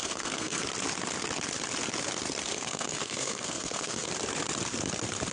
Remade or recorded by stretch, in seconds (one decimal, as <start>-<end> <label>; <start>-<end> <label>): 0.0-0.6 remade; 0.6-2.5 recorded; 2.5-4.1 remade; 4.1-5.3 recorded